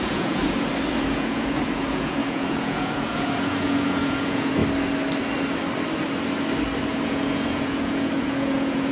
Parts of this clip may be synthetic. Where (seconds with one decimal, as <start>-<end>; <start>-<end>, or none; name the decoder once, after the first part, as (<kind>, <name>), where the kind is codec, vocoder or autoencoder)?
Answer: 0.0-0.4 (vocoder, Vocos); 0.9-4.6; 6.8-8.9